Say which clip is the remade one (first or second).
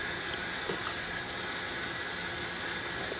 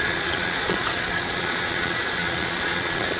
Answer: second